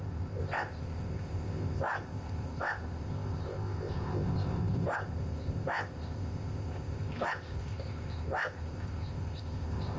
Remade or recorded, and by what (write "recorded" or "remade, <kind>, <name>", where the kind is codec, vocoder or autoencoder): remade, codec, ZipCodec